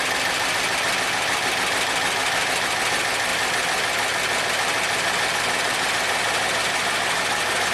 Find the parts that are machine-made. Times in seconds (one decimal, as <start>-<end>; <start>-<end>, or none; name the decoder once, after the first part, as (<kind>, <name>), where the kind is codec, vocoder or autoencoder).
2.2-2.9 (vocoder, BigVGAN v2); 3.3-7.7